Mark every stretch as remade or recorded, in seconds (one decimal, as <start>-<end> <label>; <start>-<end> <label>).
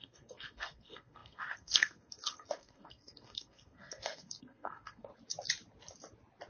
0.0-5.1 remade; 5.1-6.5 recorded